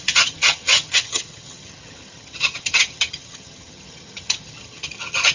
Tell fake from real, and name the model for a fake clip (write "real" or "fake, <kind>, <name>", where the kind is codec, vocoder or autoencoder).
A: fake, vocoder, HiFi-GAN